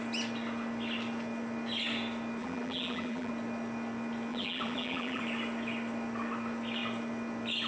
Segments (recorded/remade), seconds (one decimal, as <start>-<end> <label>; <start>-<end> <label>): 0.0-2.4 recorded; 2.4-3.3 remade; 3.3-4.3 recorded; 4.3-5.2 remade; 5.2-7.7 recorded